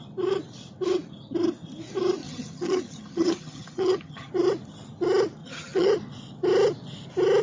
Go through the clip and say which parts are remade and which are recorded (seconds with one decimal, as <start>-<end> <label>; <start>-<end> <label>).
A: 0.0-2.2 recorded; 2.2-4.3 remade; 4.3-5.4 recorded; 5.4-5.9 remade; 5.9-7.4 recorded